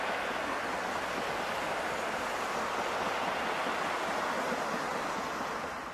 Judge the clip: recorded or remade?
recorded